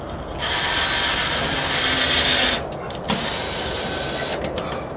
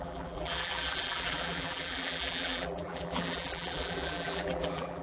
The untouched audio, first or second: first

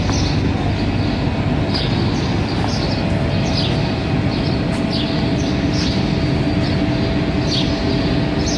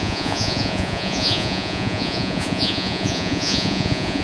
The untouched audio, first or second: first